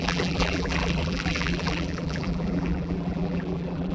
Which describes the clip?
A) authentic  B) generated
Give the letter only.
B